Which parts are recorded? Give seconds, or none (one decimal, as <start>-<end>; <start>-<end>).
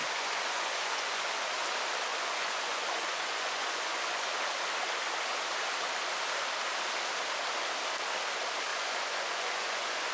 1.3-2.1; 4.3-8.7